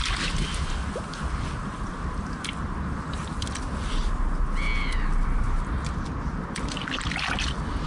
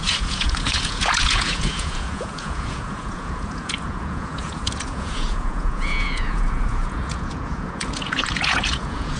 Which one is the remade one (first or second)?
second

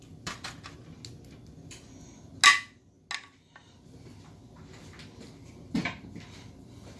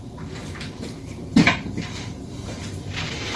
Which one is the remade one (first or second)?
second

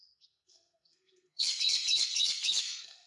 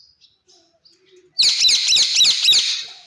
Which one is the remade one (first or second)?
first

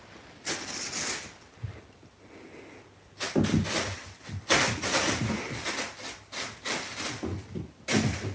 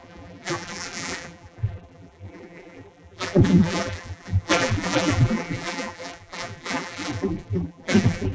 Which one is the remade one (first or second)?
second